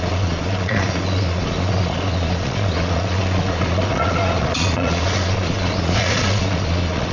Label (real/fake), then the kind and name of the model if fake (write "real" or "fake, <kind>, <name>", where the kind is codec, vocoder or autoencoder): fake, vocoder, Vocos